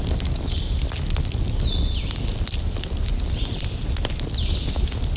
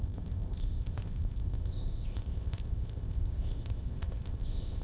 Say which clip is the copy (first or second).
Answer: second